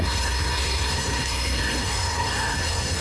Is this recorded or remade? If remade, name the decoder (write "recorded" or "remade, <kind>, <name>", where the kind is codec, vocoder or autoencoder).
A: remade, codec, SNAC